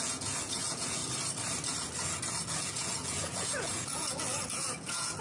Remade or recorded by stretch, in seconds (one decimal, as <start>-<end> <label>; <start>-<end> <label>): 0.0-1.0 remade; 1.0-2.4 recorded; 2.4-5.2 remade